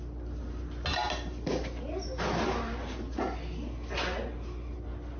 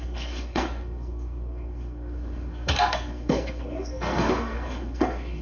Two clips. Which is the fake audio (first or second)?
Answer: second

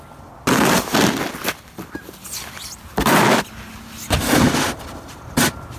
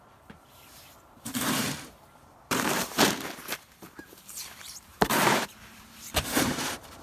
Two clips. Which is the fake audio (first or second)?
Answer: second